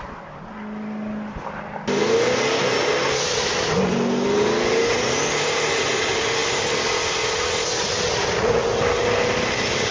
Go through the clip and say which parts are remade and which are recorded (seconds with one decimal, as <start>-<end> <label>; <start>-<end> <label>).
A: 0.0-9.9 recorded